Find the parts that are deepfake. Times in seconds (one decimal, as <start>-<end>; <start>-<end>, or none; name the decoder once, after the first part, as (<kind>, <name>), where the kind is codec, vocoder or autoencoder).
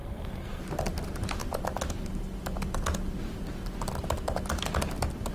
0.0-0.6 (codec, SNAC)